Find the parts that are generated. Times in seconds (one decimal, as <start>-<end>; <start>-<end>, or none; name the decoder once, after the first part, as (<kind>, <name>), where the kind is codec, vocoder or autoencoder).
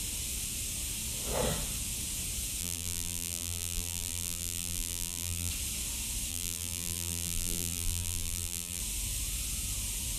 2.6-5.5 (vocoder, BigVGAN v2); 6.3-8.8